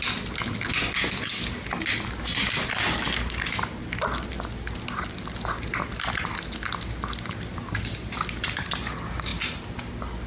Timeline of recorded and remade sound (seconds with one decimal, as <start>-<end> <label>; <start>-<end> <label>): 0.0-10.3 recorded